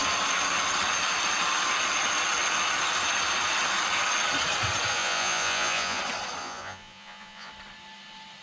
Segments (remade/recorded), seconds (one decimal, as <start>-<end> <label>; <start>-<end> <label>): 0.0-4.9 recorded; 4.9-6.0 remade; 6.0-6.4 recorded; 6.4-7.5 remade; 7.5-8.4 recorded

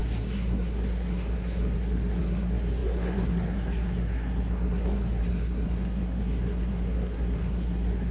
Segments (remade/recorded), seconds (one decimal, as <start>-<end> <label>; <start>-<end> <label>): 0.0-8.1 remade

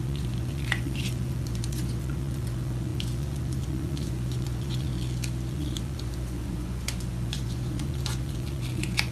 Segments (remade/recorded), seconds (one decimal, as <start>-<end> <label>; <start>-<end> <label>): 0.0-4.9 remade; 4.9-5.5 recorded; 5.5-9.1 remade

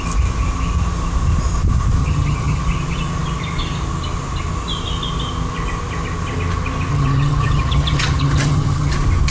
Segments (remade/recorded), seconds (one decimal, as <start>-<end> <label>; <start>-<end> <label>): 0.0-2.0 recorded; 2.0-2.6 remade; 2.6-6.9 recorded; 6.9-8.9 remade; 8.9-9.3 recorded

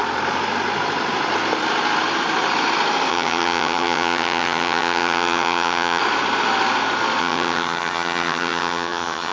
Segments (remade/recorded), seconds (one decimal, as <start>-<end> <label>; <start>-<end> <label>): 0.0-3.1 recorded; 3.1-6.0 remade; 6.0-7.2 recorded; 7.2-9.3 remade

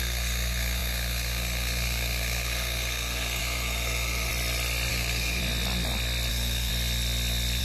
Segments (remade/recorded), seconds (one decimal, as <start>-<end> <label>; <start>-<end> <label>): 0.0-4.3 remade; 4.3-4.9 recorded; 4.9-5.4 remade; 5.4-6.3 recorded; 6.3-6.7 remade; 6.7-7.6 recorded

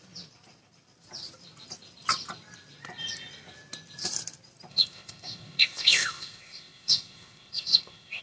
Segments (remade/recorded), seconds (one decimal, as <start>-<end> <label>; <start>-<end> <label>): 0.0-4.7 recorded; 4.7-8.2 remade

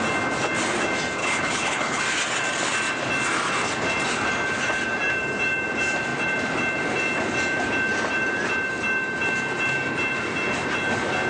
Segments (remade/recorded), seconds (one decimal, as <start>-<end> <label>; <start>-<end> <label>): 0.0-1.2 recorded; 1.2-2.0 remade; 2.0-11.3 recorded